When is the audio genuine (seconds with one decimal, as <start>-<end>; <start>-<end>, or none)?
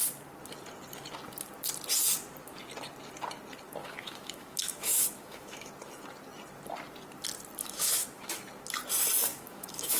0.0-3.8; 5.7-7.6; 8.4-9.3